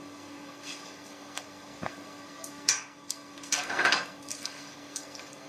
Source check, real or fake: fake